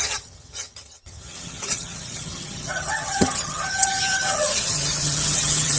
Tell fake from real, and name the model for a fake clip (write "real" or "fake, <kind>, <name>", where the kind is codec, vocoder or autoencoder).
fake, vocoder, HiFi-GAN